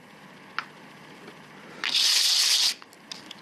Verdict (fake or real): real